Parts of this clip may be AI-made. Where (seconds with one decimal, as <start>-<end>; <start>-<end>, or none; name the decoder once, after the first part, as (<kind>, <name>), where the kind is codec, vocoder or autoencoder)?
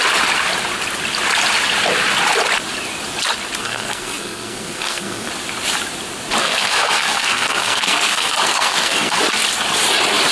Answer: 3.6-5.3 (codec, SNAC); 6.4-9.2